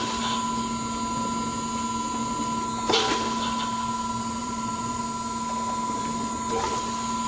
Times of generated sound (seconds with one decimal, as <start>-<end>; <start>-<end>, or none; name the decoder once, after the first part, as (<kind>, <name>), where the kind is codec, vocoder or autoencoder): 4.4-5.0 (vocoder, BigVGAN v2)